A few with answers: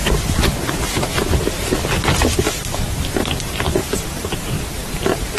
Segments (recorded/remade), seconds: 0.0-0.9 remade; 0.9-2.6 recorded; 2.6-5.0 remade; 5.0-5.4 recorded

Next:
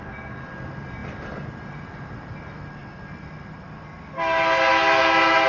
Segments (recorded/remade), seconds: 0.0-5.5 recorded